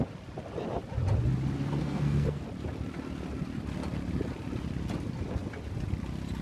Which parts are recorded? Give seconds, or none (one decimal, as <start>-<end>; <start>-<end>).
0.0-1.8; 2.4-6.4